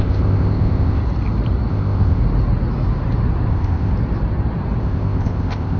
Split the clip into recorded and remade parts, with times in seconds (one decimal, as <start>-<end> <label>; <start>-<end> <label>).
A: 0.0-1.0 remade; 1.0-1.7 recorded; 1.7-2.2 remade; 2.2-3.5 recorded; 3.5-3.9 remade; 3.9-4.8 recorded; 4.8-5.8 remade